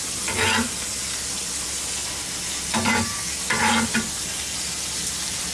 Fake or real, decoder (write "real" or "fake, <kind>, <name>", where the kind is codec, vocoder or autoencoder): real